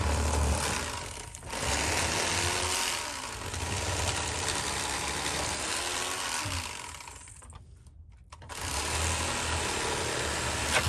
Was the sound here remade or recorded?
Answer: recorded